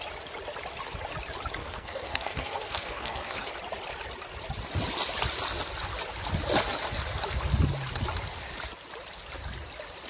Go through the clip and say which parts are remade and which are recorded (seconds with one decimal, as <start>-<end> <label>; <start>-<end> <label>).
0.0-1.6 recorded; 1.6-3.5 remade; 3.5-10.1 recorded